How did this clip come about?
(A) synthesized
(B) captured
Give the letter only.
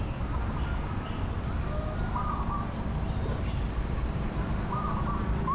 B